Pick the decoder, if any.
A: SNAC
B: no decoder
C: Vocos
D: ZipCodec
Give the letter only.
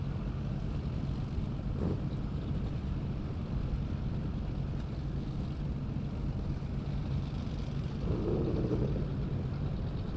B